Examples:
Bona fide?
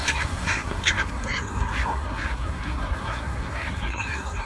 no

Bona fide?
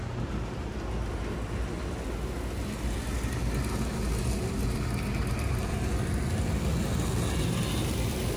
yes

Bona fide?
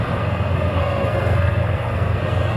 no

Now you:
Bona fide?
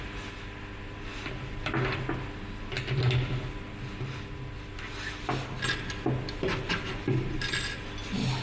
yes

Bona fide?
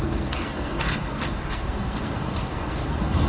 no